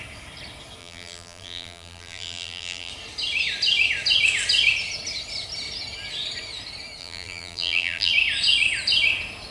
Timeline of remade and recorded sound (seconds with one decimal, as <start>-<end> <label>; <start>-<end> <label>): 0.0-0.8 recorded; 0.8-2.9 remade; 2.9-7.0 recorded; 7.0-8.1 remade; 8.1-9.5 recorded